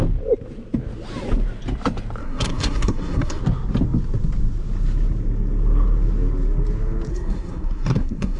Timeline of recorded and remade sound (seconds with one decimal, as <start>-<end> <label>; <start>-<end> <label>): 0.0-2.2 recorded; 2.2-3.4 remade; 3.4-7.1 recorded; 7.1-8.4 remade